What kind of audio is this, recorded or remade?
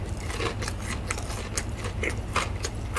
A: recorded